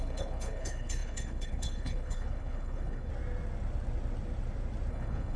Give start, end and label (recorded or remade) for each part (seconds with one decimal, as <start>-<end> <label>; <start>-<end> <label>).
0.0-3.1 remade; 3.1-4.9 recorded; 4.9-5.4 remade